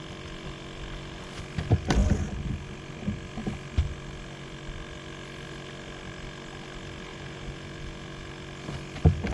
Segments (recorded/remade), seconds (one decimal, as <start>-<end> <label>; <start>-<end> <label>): 0.0-7.1 recorded; 7.1-8.3 remade; 8.3-9.3 recorded